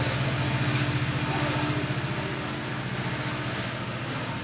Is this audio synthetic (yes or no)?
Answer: no